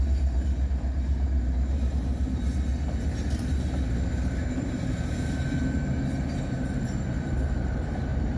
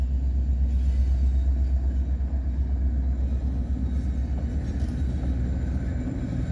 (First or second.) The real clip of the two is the second